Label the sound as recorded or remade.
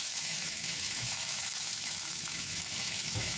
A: remade